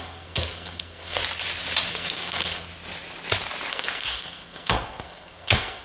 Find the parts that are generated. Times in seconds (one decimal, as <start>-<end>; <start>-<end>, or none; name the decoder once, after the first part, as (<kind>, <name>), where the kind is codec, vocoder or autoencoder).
0.0-1.2 (codec, SNAC); 1.9-2.7; 3.7-5.8